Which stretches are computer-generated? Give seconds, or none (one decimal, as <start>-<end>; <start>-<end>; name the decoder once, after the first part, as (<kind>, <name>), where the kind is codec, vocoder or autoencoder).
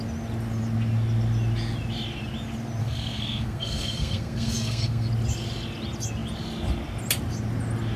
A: 2.8-5.1 (codec, SNAC)